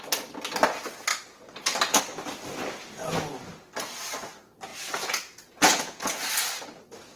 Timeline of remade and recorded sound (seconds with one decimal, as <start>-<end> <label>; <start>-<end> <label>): 0.0-4.7 recorded; 4.7-6.2 remade; 6.2-7.2 recorded